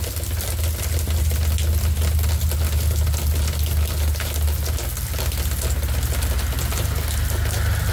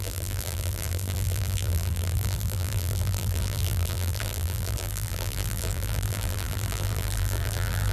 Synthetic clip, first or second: second